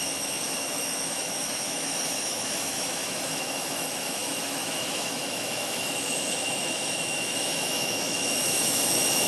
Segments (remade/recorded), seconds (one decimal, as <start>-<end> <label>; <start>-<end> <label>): 0.0-9.3 remade